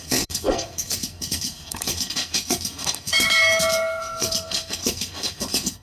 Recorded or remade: remade